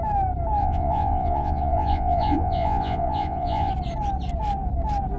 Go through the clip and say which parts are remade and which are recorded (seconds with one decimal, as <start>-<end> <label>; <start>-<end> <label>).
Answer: 0.0-0.6 recorded; 0.6-3.7 remade; 3.7-5.2 recorded